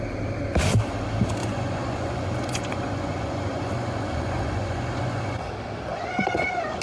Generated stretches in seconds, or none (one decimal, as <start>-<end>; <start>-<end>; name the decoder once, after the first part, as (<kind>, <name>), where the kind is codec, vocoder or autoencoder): 1.4-5.5 (vocoder, Vocos); 5.9-6.8